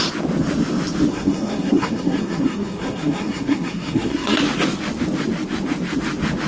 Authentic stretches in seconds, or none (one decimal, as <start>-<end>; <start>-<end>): 0.0-1.1; 4.4-6.5